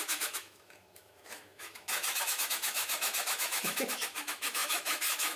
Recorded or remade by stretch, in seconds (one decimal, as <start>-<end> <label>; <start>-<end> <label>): 0.0-5.4 remade